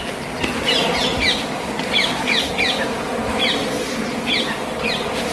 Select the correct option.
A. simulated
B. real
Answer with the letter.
B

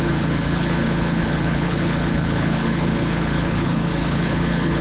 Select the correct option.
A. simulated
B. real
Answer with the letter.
A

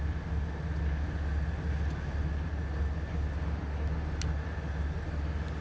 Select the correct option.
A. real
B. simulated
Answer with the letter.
A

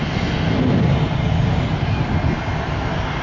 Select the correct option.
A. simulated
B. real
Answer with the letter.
B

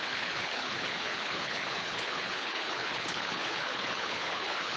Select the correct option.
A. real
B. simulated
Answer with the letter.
B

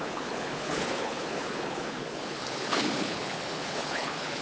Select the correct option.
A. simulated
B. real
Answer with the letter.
A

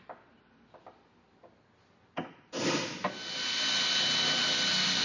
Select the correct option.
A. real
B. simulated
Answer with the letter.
A